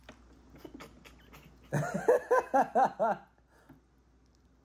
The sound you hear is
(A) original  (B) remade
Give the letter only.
A